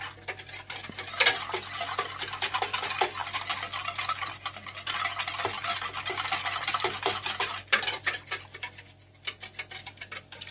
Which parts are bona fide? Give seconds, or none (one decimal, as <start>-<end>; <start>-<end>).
0.0-10.5